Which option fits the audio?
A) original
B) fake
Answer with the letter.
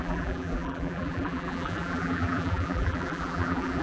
B